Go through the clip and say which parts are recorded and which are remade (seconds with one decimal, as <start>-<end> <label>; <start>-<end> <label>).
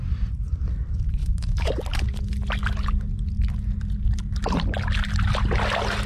0.0-1.2 recorded; 1.2-1.7 remade; 1.7-6.1 recorded